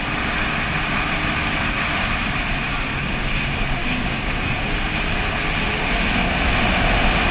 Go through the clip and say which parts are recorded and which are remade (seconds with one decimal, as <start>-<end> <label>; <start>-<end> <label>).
0.0-3.8 recorded; 3.8-4.5 remade; 4.5-7.3 recorded